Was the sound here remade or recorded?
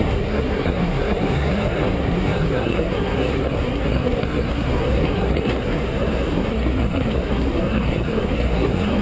remade